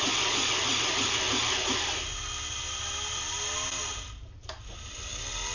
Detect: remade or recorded recorded